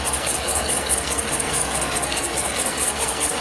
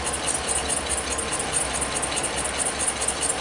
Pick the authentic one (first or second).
second